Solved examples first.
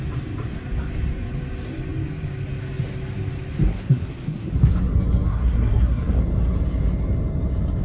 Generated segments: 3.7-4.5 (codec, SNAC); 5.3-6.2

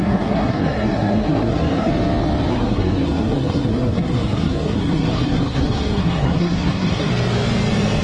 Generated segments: 0.0-1.9 (codec, SNAC); 2.5-7.1

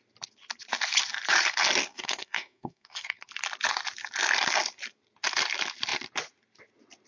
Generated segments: 1.8-3.3 (codec, SNAC)

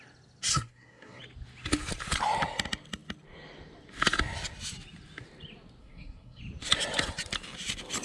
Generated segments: 0.5-1.2 (codec, SNAC); 5.8-6.4

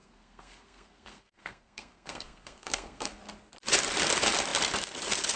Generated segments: 0.0-3.2 (codec, SNAC)

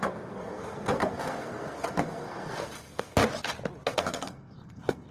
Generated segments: 0.0-3.2 (codec, SNAC); 3.9-5.1

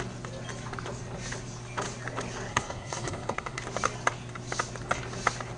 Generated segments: 2.5-3.6 (codec, SNAC)